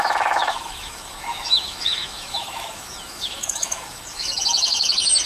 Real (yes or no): no